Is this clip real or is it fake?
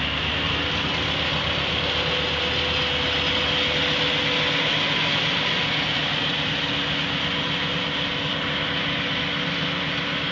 real